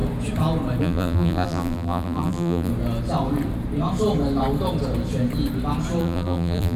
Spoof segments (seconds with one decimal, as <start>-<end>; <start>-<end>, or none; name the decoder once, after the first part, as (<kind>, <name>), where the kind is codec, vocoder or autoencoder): 0.8-2.7 (vocoder, BigVGAN v2); 6.0-6.8